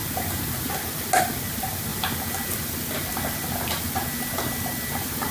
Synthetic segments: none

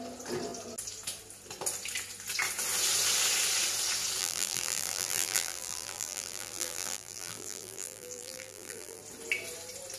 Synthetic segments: 4.2-9.0 (vocoder, BigVGAN v2)

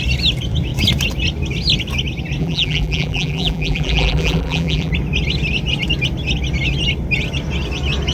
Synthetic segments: 2.4-4.9 (vocoder, BigVGAN v2)

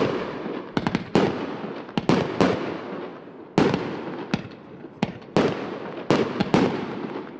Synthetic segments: 6.4-7.4 (vocoder, BigVGAN v2)

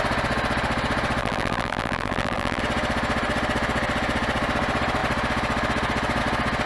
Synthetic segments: 1.2-2.6 (vocoder, BigVGAN v2)

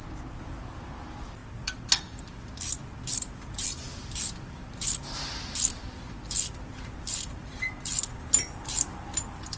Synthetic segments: 0.0-9.6 (vocoder, BigVGAN v2)